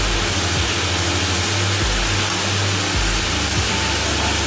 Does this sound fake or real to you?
real